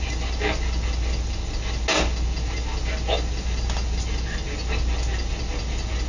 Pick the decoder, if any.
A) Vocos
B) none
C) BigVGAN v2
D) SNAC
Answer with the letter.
B